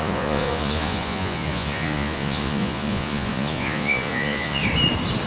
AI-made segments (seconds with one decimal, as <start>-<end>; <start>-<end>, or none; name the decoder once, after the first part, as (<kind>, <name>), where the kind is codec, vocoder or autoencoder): 0.0-4.6 (vocoder, Vocos)